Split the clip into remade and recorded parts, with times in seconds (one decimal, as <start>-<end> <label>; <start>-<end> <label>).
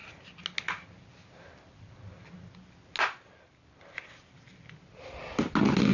0.0-5.9 recorded